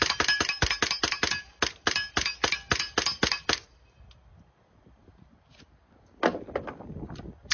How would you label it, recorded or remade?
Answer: recorded